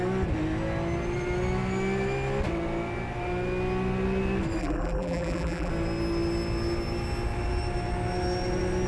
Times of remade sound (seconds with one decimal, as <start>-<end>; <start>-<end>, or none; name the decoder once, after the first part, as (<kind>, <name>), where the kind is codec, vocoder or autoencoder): 4.6-5.7 (vocoder, BigVGAN v2)